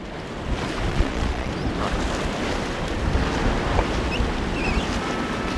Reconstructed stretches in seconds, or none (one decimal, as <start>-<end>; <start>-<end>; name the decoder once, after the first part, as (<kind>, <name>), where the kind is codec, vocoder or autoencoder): 0.9-1.5 (vocoder, Vocos)